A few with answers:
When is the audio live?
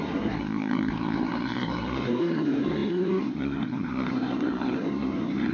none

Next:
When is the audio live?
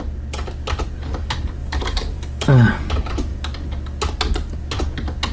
0.0-1.6; 2.9-5.3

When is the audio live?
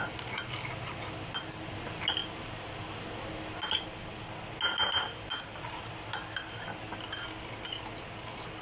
0.0-8.6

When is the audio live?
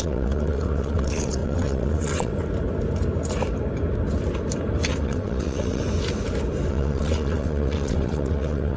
2.3-5.0; 5.8-6.7